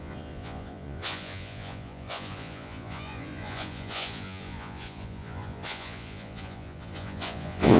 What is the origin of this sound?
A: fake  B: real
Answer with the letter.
A